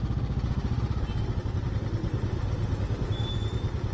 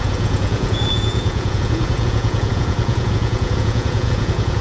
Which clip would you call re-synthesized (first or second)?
second